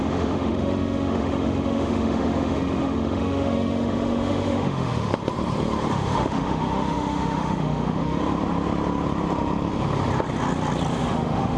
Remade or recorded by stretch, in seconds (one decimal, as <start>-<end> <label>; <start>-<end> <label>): 0.0-5.1 remade; 5.1-5.9 recorded; 5.9-8.2 remade; 8.2-10.9 recorded; 10.9-11.6 remade